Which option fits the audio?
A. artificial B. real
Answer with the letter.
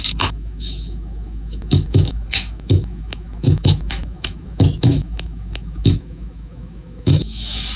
A